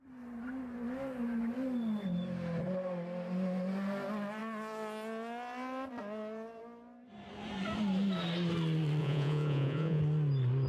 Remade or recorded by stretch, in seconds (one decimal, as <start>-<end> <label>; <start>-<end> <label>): 0.0-9.0 recorded; 9.0-10.0 remade; 10.0-10.7 recorded